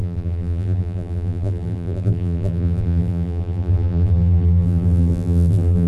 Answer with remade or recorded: remade